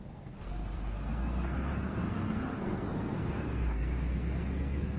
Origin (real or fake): fake